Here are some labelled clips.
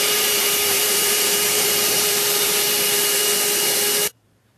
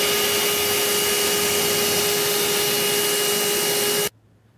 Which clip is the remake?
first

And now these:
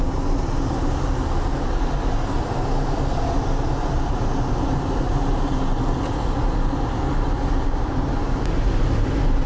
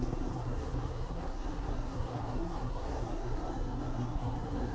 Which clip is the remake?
second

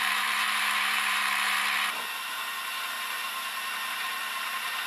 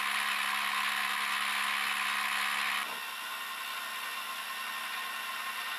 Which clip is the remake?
first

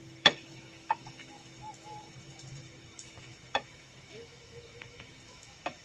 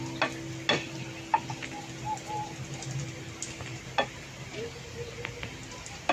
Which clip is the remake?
first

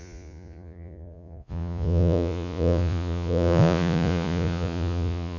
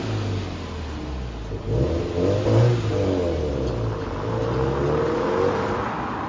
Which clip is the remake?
first